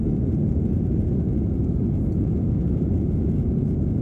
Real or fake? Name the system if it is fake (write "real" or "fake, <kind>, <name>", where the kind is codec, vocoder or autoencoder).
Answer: real